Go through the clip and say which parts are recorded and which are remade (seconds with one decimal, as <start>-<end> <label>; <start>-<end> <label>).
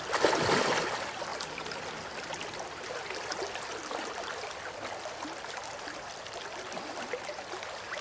0.0-8.0 recorded